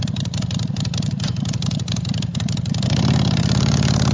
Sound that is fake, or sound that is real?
real